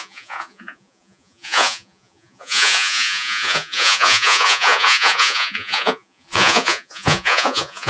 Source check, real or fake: fake